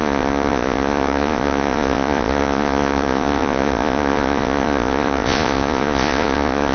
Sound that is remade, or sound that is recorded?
remade